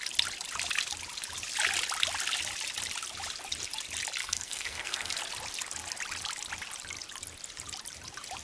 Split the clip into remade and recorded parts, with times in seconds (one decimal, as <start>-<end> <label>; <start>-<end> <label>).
0.0-4.2 recorded; 4.2-5.1 remade; 5.1-8.4 recorded